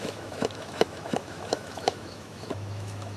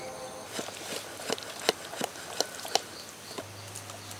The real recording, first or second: second